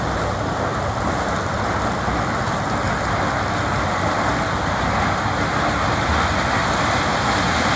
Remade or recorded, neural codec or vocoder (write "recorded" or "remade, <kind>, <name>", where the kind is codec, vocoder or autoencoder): recorded